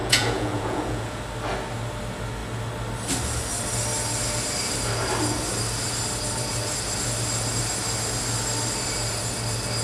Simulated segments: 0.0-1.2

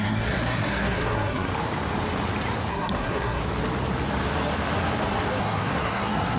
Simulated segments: 0.0-1.5; 2.7-3.4; 5.4-6.4

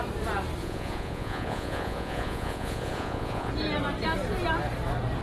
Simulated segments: 0.6-3.5